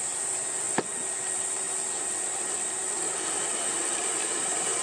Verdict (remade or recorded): remade